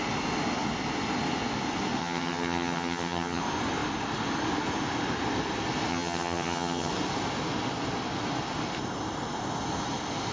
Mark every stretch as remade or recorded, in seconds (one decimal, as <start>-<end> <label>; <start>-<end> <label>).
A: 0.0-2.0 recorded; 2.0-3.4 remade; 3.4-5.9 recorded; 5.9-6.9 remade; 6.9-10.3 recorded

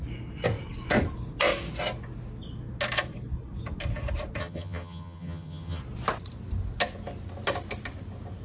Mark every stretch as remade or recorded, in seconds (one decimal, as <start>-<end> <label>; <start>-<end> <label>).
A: 0.0-4.4 recorded; 4.4-5.8 remade; 5.8-8.4 recorded

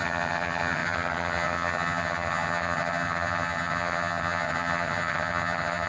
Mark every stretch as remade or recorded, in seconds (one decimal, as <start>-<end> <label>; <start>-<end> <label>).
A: 0.0-5.9 remade

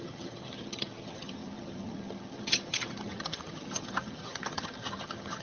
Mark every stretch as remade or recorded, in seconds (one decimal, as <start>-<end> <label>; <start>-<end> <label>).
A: 0.0-5.4 remade

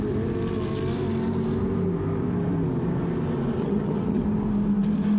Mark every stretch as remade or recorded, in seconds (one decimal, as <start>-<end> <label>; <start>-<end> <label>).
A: 0.0-3.6 recorded; 3.6-4.2 remade; 4.2-5.2 recorded